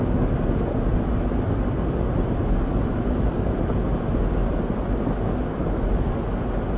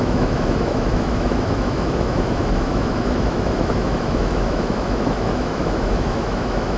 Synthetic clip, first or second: second